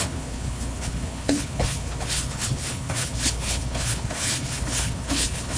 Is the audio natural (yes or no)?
no